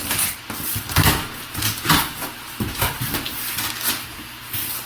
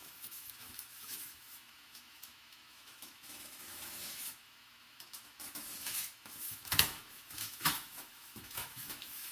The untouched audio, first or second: first